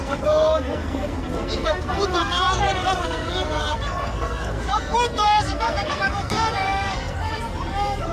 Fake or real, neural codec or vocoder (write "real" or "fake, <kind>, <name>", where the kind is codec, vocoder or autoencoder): fake, codec, SNAC